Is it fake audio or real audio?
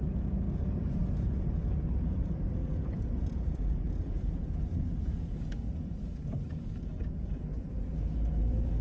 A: fake